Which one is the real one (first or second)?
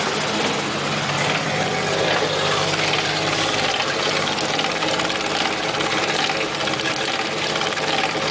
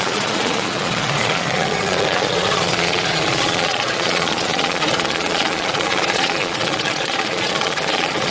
first